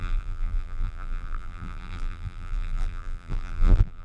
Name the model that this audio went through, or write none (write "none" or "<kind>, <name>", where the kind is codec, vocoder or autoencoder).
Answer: vocoder, BigVGAN v2